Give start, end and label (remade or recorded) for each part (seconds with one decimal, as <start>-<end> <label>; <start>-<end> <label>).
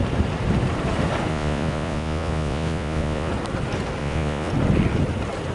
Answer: 0.0-1.3 recorded; 1.3-3.3 remade; 3.3-4.0 recorded; 4.0-4.5 remade; 4.5-5.5 recorded